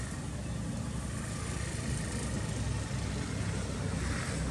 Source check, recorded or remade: recorded